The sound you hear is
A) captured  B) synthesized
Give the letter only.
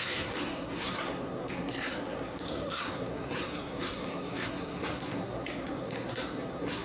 B